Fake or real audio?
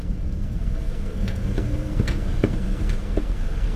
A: fake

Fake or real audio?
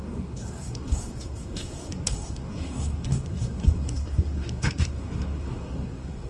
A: fake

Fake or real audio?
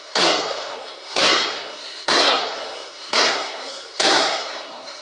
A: fake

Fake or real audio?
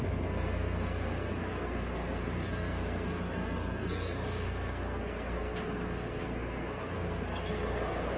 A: fake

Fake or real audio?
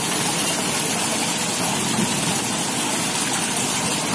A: real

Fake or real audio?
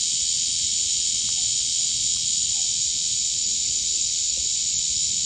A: real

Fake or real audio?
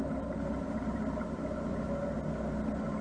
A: real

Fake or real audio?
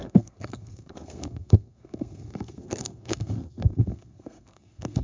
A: fake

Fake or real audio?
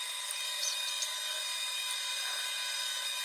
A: real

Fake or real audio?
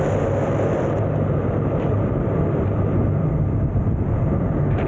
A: real